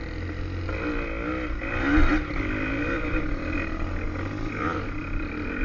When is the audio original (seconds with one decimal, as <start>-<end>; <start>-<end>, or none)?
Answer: 0.0-5.6